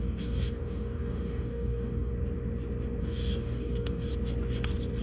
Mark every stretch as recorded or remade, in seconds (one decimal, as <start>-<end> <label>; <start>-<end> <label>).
0.0-2.1 remade; 2.1-3.0 recorded; 3.0-4.1 remade; 4.1-5.0 recorded